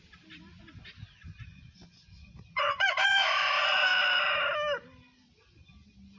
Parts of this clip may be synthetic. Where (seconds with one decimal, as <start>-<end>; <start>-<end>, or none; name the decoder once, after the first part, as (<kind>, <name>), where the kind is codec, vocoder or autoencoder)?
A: 1.5-3.9 (vocoder, Vocos)